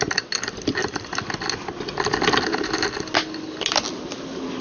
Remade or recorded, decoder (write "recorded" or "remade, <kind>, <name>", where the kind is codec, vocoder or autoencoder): recorded